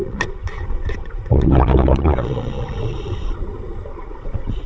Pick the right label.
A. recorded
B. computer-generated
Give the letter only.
B